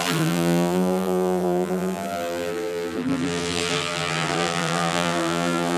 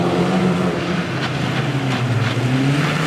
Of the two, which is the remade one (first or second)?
first